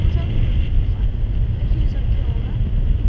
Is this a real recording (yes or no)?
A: yes